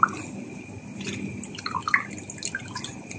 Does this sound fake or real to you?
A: real